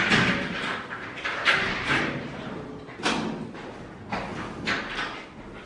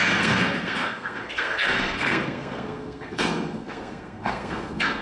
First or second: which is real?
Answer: first